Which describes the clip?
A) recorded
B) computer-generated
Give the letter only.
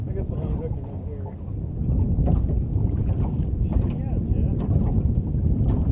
A